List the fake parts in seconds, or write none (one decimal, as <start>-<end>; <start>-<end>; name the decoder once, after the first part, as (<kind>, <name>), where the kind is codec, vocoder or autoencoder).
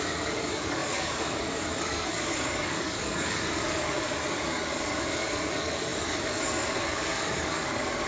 0.0-8.1 (codec, DAC)